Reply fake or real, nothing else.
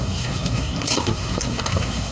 fake